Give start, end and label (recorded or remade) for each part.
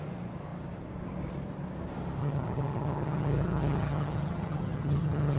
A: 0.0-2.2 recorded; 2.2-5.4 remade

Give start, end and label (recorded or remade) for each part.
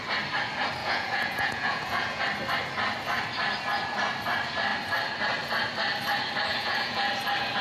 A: 0.0-0.8 recorded; 0.8-2.2 remade; 2.2-6.5 recorded; 6.5-7.1 remade; 7.1-7.6 recorded